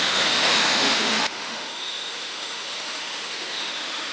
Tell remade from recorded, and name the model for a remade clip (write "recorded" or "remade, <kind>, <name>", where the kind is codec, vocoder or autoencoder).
remade, autoencoder, DAC-VAE